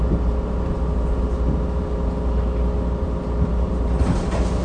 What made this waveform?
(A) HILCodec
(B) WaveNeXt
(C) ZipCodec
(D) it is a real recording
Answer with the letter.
D